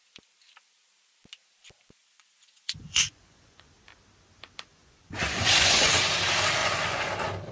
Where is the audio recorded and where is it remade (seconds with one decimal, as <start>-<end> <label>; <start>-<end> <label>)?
0.0-2.0 recorded; 2.0-3.7 remade; 3.7-4.7 recorded; 4.7-6.0 remade; 6.0-6.6 recorded; 6.6-7.1 remade; 7.1-7.5 recorded